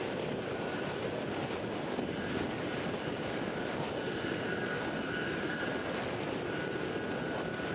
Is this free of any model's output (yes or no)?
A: yes